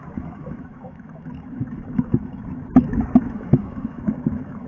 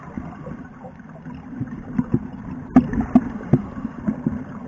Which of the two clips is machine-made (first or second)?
first